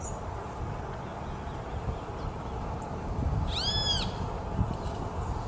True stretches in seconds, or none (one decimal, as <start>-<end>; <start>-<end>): 0.0-5.5